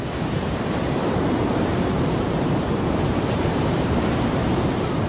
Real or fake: fake